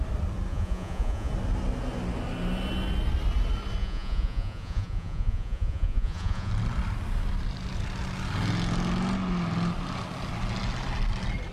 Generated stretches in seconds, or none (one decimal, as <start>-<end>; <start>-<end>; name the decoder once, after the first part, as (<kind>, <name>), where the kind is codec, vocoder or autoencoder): 0.5-1.3 (vocoder, Vocos); 3.8-6.5